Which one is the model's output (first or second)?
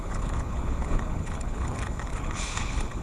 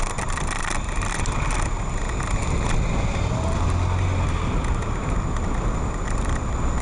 first